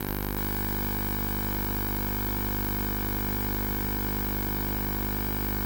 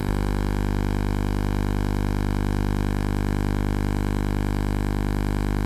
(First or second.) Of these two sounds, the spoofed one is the second